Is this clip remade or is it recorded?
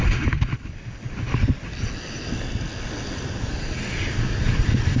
recorded